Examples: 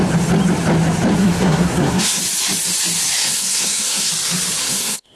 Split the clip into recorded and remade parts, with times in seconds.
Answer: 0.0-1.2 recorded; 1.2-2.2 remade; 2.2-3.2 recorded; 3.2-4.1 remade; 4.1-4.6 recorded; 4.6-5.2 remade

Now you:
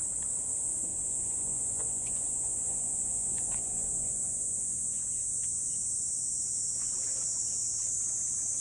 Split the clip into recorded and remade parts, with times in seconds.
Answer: 0.0-0.9 recorded; 0.9-5.7 remade; 5.7-8.6 recorded

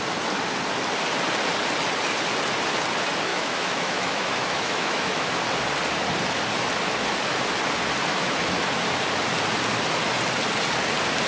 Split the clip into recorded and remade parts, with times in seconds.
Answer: 0.0-3.3 recorded; 3.3-5.3 remade; 5.3-8.1 recorded; 8.1-8.7 remade; 8.7-11.3 recorded

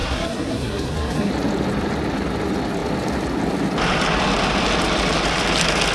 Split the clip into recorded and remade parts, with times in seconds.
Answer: 0.0-1.3 remade; 1.3-5.9 recorded